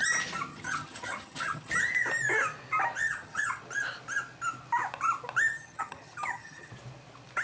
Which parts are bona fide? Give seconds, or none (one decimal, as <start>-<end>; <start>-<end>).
0.0-0.5; 1.7-3.0; 3.6-5.5; 6.7-7.4